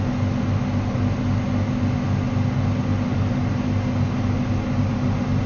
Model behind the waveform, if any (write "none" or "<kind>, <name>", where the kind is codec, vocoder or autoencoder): none